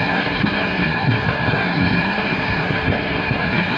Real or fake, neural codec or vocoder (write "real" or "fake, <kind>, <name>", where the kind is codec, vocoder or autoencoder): fake, codec, SNAC